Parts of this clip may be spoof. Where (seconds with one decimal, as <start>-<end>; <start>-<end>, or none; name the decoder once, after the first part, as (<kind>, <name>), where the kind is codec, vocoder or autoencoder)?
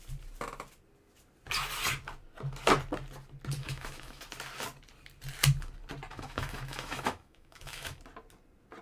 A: 3.6-4.2 (autoencoder, DAC-VAE); 6.1-8.0